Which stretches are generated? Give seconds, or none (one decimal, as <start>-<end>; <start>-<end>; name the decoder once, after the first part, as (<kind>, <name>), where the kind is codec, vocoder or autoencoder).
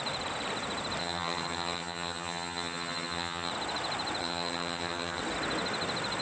1.0-3.5 (vocoder, HiFi-GAN); 4.2-5.2